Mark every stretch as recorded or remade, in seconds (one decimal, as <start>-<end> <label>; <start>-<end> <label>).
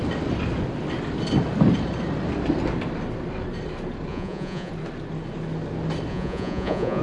0.0-4.1 recorded; 4.1-4.7 remade; 4.7-6.1 recorded; 6.1-7.0 remade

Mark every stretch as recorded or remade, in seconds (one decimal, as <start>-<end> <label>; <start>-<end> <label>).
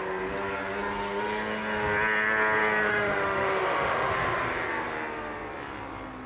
0.0-2.9 recorded; 2.9-4.1 remade; 4.1-6.3 recorded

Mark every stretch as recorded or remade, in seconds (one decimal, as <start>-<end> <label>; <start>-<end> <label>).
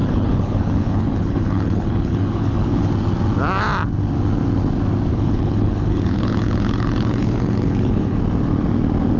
0.0-2.9 remade; 2.9-5.1 recorded; 5.1-8.2 remade; 8.2-9.2 recorded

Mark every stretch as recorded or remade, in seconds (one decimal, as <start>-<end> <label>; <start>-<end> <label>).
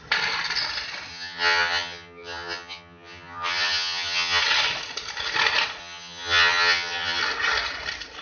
0.0-1.1 recorded; 1.1-4.4 remade; 4.4-5.8 recorded; 5.8-7.2 remade; 7.2-8.2 recorded